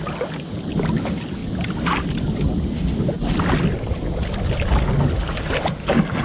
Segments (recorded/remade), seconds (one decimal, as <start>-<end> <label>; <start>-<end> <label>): 0.0-6.2 recorded

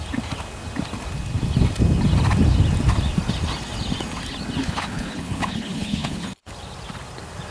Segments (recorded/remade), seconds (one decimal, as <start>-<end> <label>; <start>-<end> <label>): 0.0-4.6 recorded; 4.6-6.5 remade; 6.5-7.5 recorded

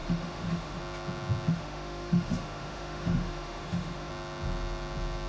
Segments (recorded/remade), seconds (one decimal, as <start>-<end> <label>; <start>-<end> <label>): 0.0-0.8 remade; 0.8-1.5 recorded; 1.5-4.1 remade; 4.1-5.3 recorded

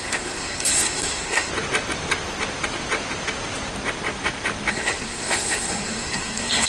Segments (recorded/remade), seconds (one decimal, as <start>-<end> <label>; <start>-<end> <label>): 0.0-1.5 remade; 1.5-4.7 recorded; 4.7-6.7 remade

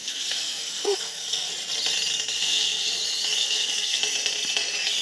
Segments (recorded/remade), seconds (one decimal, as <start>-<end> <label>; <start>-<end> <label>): 0.0-1.5 remade; 1.5-2.4 recorded; 2.4-3.0 remade; 3.0-3.4 recorded; 3.4-4.0 remade; 4.0-5.0 recorded

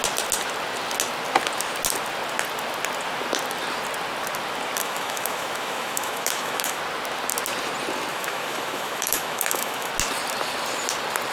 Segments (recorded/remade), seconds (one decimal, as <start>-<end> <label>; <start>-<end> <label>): 0.0-4.8 recorded; 4.8-6.8 remade; 6.8-8.1 recorded; 8.1-9.9 remade; 9.9-11.3 recorded